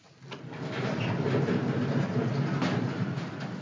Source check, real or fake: real